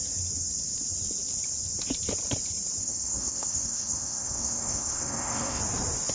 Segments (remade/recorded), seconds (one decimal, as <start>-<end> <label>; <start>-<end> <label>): 0.0-2.8 recorded; 2.8-5.6 remade; 5.6-6.1 recorded

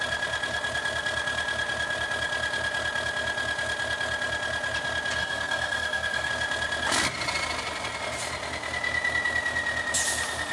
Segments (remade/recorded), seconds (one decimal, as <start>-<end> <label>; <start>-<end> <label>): 0.0-5.2 recorded; 5.2-6.3 remade; 6.3-10.5 recorded

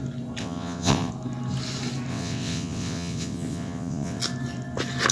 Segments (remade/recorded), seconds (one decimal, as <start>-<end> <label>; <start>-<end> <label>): 0.0-0.4 recorded; 0.4-1.1 remade; 1.1-2.1 recorded; 2.1-4.2 remade; 4.2-5.1 recorded

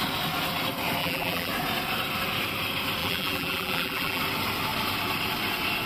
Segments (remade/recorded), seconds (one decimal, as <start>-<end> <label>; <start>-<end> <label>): 0.0-1.0 recorded; 1.0-1.5 remade; 1.5-3.0 recorded; 3.0-4.2 remade; 4.2-5.9 recorded

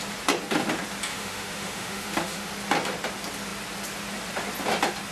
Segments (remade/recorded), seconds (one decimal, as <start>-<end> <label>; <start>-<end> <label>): 0.0-1.1 recorded; 1.1-2.5 remade; 2.5-5.1 recorded